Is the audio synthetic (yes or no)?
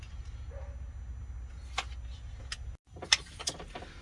no